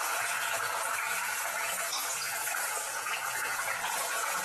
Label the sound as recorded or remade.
remade